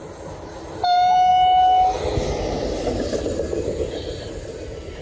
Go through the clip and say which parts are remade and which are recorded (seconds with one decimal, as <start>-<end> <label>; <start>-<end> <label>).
0.0-5.0 recorded